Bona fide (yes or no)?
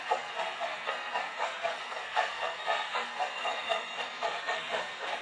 no